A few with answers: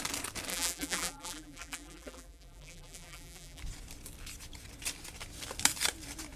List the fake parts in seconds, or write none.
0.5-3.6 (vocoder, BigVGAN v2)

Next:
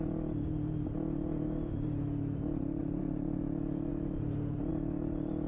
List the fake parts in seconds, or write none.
2.8-3.4 (vocoder, BigVGAN v2)